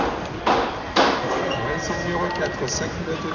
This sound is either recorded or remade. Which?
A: recorded